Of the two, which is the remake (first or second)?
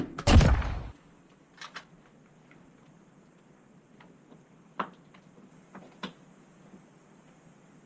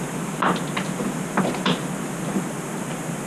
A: first